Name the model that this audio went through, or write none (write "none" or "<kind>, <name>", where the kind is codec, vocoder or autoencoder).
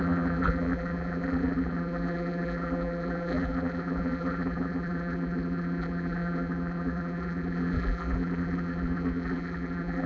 vocoder, BigVGAN v2